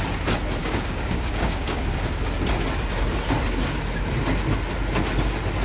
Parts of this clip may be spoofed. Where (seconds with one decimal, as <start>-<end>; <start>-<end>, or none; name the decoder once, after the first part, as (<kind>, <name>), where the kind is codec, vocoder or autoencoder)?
0.6-2.3 (codec, DAC)